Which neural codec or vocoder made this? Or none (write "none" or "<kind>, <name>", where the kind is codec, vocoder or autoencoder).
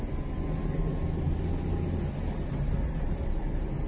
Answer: none